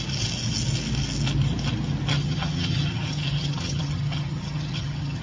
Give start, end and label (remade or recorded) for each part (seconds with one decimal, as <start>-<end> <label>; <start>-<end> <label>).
0.0-2.1 recorded; 2.1-5.2 remade